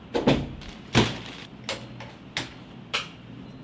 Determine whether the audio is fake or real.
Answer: real